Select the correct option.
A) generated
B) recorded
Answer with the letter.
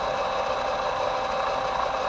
B